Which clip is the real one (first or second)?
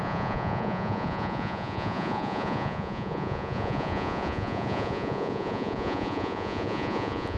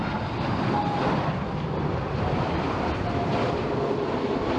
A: second